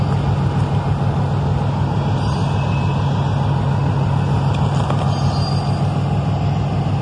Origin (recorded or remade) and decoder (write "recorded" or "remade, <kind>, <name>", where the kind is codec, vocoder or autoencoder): recorded